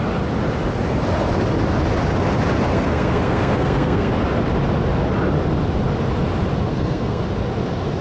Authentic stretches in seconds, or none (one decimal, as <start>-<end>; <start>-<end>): 0.0-2.7; 4.1-6.7; 7.2-8.0